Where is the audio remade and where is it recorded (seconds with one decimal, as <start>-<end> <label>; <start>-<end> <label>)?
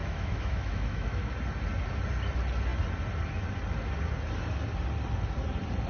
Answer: 0.0-1.3 remade; 1.3-5.9 recorded